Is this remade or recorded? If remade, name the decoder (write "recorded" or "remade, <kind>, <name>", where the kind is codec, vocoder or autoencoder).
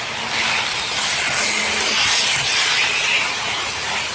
recorded